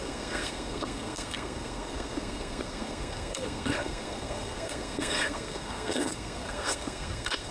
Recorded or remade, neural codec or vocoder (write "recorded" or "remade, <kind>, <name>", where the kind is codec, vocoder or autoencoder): remade, codec, SNAC